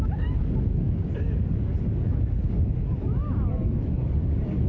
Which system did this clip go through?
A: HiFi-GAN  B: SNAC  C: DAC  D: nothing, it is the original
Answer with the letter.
C